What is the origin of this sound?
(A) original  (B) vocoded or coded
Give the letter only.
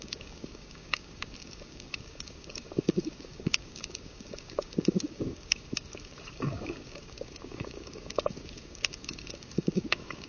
B